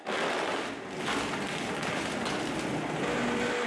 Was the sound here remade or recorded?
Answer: recorded